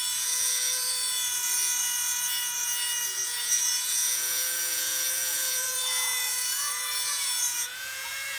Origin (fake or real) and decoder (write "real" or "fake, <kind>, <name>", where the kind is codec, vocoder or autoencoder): fake, vocoder, Vocos